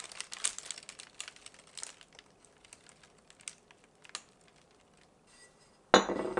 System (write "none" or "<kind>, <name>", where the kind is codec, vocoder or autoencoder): none